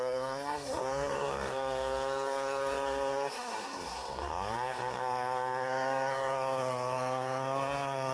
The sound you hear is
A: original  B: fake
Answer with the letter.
B